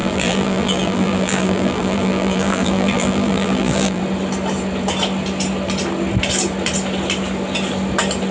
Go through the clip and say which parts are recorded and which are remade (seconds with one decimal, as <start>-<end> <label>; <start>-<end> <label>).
0.0-4.0 remade; 4.0-8.3 recorded